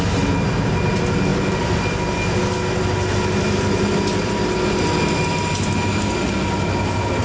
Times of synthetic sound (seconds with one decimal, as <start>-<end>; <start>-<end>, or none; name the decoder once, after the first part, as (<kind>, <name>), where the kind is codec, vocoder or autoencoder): none